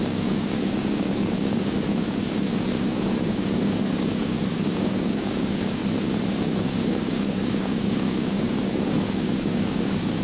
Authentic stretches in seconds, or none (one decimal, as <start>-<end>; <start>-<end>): 5.8-6.3